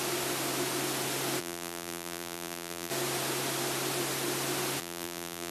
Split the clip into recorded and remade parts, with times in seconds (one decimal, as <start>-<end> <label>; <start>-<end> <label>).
0.0-1.4 recorded; 1.4-2.9 remade; 2.9-4.8 recorded; 4.8-5.5 remade